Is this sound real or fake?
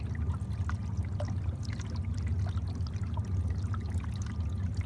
real